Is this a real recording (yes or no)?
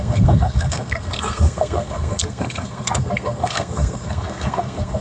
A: no